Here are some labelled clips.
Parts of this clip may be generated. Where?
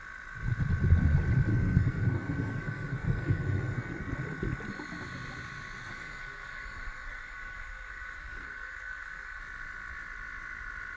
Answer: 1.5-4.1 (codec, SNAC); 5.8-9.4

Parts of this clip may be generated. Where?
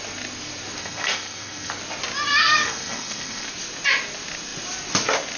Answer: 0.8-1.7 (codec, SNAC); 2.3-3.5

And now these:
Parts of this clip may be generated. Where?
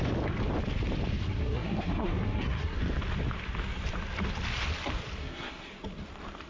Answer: 1.2-2.8 (codec, SNAC); 5.2-5.7